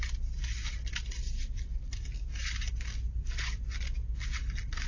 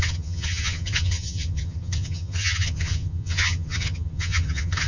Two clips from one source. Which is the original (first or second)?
first